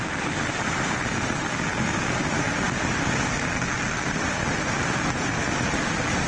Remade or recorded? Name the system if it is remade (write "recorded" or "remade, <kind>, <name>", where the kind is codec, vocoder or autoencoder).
recorded